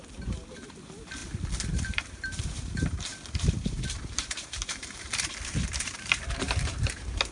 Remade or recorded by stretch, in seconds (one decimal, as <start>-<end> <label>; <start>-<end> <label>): 0.0-1.2 remade; 1.2-1.7 recorded; 1.7-3.1 remade; 3.1-3.6 recorded; 3.6-7.3 remade